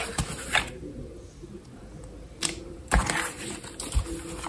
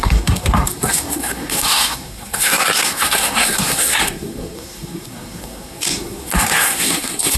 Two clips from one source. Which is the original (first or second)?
first